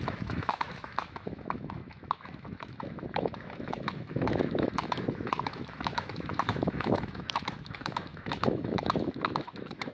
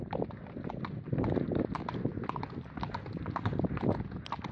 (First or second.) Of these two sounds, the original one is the second